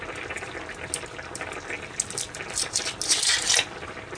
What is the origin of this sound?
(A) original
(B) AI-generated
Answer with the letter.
A